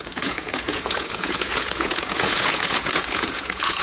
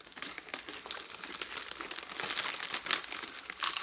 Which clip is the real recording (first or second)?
second